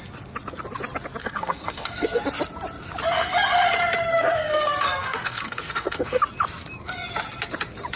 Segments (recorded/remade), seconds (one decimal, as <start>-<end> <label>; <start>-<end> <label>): 0.0-1.2 recorded; 1.2-2.2 remade; 2.2-4.1 recorded; 4.1-6.2 remade; 6.2-8.0 recorded

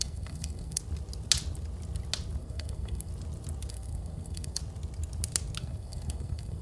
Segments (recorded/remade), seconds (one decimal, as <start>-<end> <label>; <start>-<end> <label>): 0.0-0.8 remade; 0.8-2.4 recorded; 2.4-3.1 remade; 3.1-3.7 recorded; 3.7-4.6 remade; 4.6-5.6 recorded; 5.6-6.6 remade

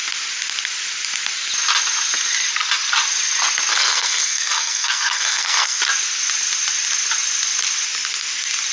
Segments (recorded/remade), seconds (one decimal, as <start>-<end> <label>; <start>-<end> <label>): 0.0-3.7 recorded; 3.7-5.8 remade; 5.8-8.7 recorded

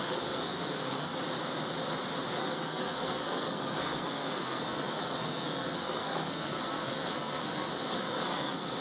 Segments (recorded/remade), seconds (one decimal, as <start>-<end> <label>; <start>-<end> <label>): 0.0-1.1 remade; 1.1-2.3 recorded; 2.3-8.8 remade

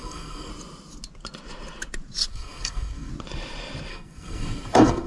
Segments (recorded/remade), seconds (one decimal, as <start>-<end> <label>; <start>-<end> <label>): 0.0-0.5 remade; 0.5-2.3 recorded; 2.3-3.1 remade; 3.1-3.9 recorded; 3.9-5.1 remade

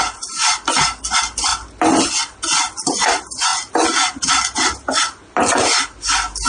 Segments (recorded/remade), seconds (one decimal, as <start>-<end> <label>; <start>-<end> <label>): 0.0-6.5 recorded

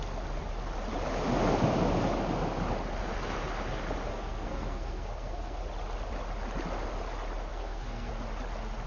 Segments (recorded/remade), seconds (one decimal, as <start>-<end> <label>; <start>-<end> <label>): 0.0-4.1 recorded; 4.1-5.6 remade; 5.6-7.5 recorded; 7.5-8.1 remade; 8.1-8.9 recorded

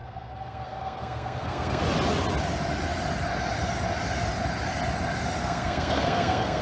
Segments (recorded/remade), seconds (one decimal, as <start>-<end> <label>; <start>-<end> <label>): 0.0-1.8 remade; 1.8-5.4 recorded; 5.4-6.6 remade